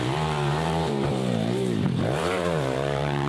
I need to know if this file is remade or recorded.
remade